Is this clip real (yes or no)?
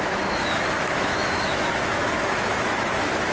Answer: no